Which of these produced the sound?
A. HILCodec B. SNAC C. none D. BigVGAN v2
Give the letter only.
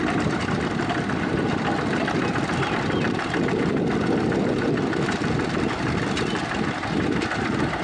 C